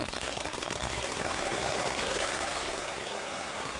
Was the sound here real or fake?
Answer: fake